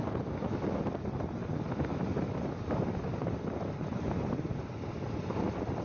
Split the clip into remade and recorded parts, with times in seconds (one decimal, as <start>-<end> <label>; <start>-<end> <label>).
0.0-5.8 recorded